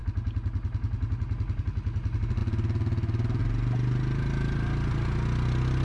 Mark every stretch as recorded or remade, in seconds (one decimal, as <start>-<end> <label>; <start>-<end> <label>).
0.0-5.8 recorded